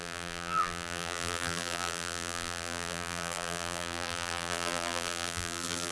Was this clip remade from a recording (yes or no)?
yes